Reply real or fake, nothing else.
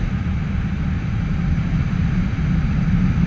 real